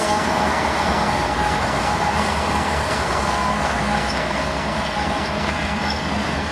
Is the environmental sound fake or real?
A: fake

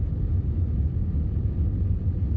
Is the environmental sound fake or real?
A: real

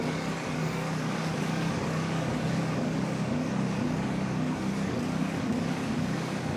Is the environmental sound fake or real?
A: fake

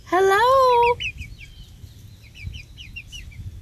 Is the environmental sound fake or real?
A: real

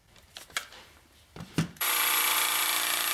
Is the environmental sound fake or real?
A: fake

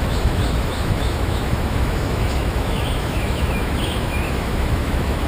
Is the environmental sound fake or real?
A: fake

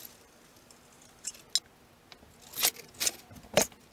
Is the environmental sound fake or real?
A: real